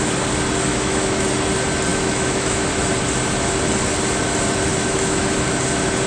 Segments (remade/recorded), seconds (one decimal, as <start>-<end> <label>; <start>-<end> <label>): 0.0-0.7 recorded; 0.7-1.3 remade; 1.3-1.9 recorded; 1.9-2.7 remade; 2.7-4.7 recorded; 4.7-5.2 remade; 5.2-6.1 recorded